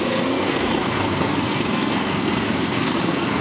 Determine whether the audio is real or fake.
fake